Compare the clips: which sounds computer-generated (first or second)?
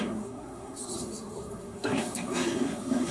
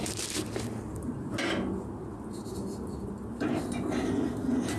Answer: first